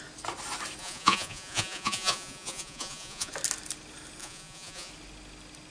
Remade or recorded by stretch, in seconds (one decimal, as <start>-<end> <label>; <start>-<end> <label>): 0.0-0.8 recorded; 0.8-3.3 remade; 3.3-4.2 recorded; 4.2-4.9 remade; 4.9-5.7 recorded